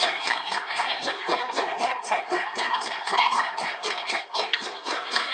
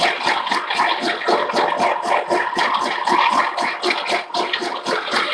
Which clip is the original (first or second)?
second